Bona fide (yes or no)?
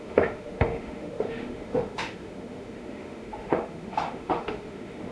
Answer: no